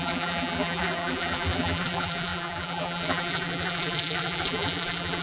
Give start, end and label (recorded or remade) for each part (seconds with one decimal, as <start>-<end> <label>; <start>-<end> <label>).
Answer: 0.0-5.2 remade